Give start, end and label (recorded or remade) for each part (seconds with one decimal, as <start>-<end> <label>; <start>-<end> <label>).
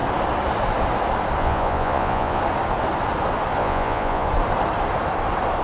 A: 0.0-1.4 recorded; 1.4-2.4 remade; 2.4-3.6 recorded; 3.6-4.3 remade; 4.3-5.6 recorded